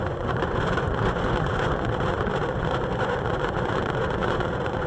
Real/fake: fake